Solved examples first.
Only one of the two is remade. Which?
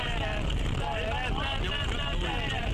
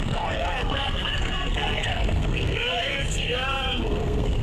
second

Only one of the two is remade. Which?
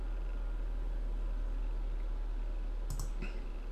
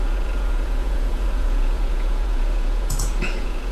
second